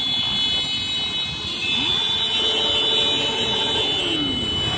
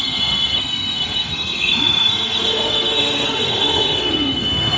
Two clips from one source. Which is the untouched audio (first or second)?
first